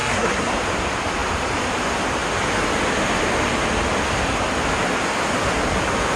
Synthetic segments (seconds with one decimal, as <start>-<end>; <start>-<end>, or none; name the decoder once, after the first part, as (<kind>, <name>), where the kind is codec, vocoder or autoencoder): 0.0-0.5 (codec, SNAC)